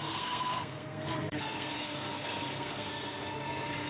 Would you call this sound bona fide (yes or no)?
no